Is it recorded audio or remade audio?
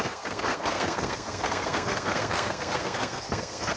remade